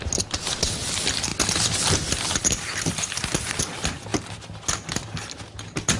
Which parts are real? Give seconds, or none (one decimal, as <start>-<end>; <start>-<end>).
0.0-6.0